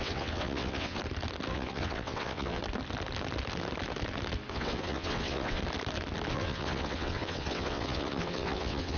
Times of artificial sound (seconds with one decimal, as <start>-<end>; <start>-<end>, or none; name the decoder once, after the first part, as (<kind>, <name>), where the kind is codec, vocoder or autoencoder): 0.0-1.0 (vocoder, WaveNeXt); 1.5-2.6; 4.5-5.6; 6.3-9.0